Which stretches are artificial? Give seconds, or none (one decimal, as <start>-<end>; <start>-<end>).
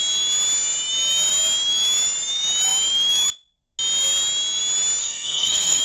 5.0-5.8